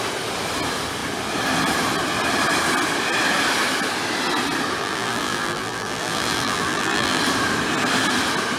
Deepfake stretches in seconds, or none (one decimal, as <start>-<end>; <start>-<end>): 4.8-7.2